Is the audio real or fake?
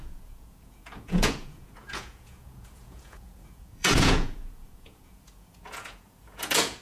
fake